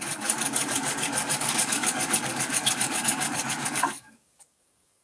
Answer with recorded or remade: remade